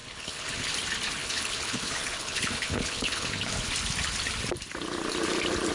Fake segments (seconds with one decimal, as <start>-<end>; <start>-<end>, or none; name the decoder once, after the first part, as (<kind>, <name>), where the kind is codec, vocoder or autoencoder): 0.0-0.7 (codec, HILCodec); 1.2-3.7